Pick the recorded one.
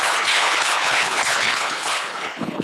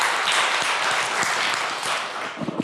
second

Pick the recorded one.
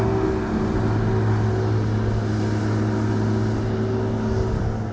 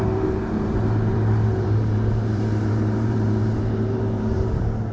first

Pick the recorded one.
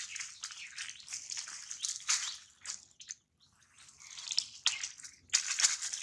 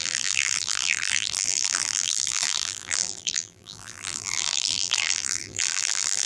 first